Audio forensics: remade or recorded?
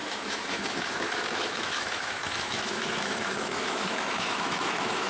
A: remade